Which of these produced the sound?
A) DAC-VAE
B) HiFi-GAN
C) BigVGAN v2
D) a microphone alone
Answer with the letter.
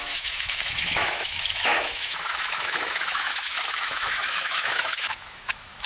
A